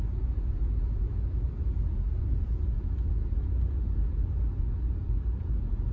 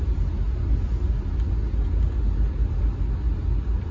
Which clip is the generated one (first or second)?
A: first